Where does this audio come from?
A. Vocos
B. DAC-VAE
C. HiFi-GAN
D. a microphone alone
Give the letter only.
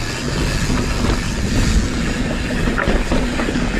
D